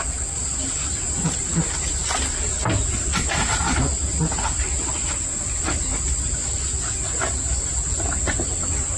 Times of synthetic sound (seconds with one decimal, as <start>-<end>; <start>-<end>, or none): none